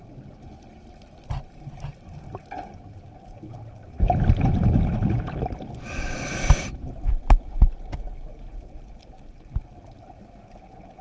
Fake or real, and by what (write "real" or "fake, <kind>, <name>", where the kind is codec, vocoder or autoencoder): real